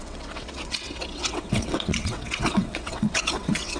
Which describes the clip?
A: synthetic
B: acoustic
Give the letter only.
A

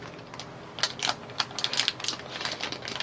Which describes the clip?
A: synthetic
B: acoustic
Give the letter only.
B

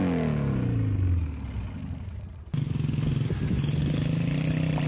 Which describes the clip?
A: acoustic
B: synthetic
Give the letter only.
A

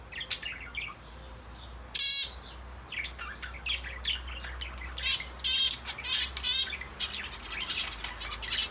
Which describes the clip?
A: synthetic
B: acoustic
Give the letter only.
B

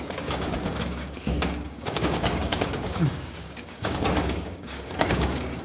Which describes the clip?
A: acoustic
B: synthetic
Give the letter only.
B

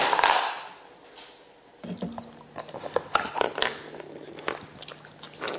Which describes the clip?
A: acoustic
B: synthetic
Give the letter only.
A